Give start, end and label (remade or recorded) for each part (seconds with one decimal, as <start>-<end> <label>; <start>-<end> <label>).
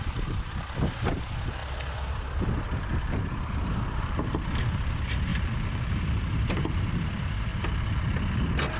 0.0-1.6 remade; 1.6-2.5 recorded; 2.5-5.3 remade; 5.3-6.2 recorded; 6.2-7.5 remade; 7.5-8.8 recorded